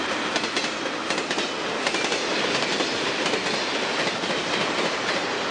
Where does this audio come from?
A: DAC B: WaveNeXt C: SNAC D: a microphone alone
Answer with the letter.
D